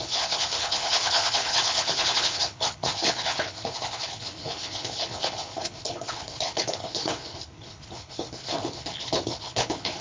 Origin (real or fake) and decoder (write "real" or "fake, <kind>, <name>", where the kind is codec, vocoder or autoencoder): fake, codec, HILCodec